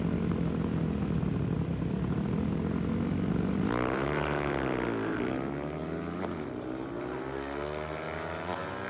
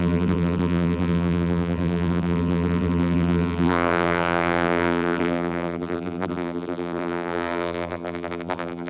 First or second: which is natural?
first